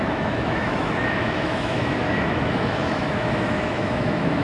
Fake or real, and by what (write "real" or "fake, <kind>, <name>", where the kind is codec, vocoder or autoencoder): fake, autoencoder, DAC-VAE